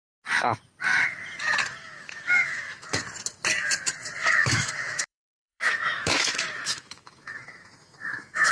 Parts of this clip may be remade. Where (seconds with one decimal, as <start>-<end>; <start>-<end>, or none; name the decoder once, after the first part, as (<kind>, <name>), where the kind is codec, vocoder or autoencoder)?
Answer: 1.8-3.0 (autoencoder, DAC-VAE); 4.2-8.5